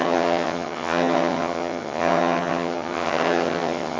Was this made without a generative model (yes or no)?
no